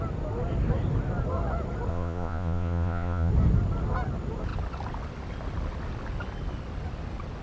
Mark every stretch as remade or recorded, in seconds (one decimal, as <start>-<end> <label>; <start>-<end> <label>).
0.0-1.9 recorded; 1.9-3.3 remade; 3.3-7.4 recorded